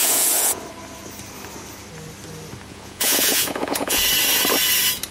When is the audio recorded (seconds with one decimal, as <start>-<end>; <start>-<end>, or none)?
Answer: 0.6-2.7; 4.0-5.1